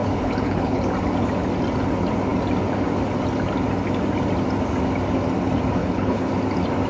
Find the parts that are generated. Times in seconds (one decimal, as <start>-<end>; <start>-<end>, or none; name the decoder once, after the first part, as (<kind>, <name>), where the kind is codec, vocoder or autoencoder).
0.0-0.8 (codec, HILCodec); 5.8-6.3